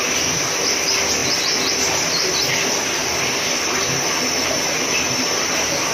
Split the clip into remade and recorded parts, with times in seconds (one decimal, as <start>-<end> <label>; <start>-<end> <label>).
0.0-3.0 recorded; 3.0-4.6 remade; 4.6-5.9 recorded